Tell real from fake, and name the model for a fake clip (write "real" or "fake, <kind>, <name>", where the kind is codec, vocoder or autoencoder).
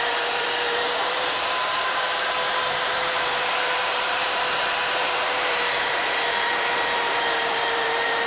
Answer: fake, vocoder, BigVGAN v2